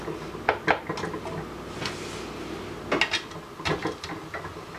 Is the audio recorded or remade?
recorded